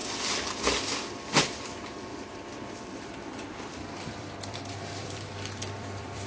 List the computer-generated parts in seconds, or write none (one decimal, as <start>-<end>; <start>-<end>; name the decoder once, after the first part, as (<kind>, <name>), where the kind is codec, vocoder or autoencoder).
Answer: 2.1-6.3 (vocoder, BigVGAN v2)